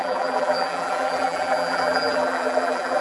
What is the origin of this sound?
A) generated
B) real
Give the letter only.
A